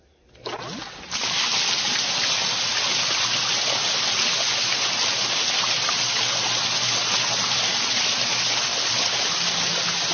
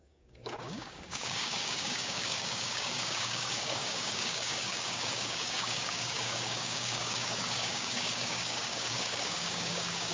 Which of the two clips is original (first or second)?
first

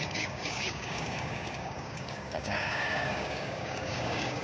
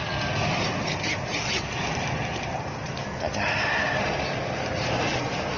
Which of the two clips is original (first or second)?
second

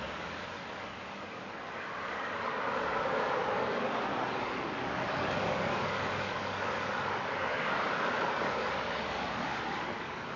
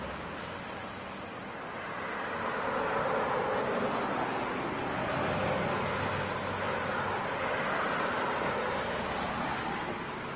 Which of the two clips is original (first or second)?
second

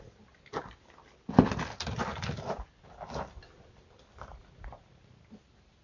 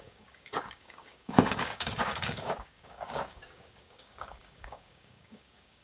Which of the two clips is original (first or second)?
first